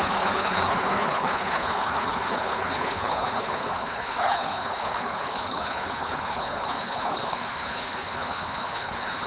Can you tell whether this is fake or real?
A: fake